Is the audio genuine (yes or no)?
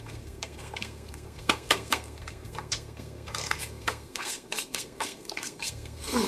no